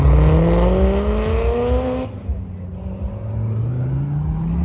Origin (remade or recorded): recorded